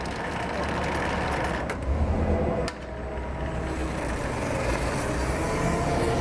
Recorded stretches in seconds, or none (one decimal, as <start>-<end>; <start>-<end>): 0.0-6.2